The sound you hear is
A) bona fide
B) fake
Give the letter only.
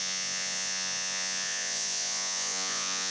B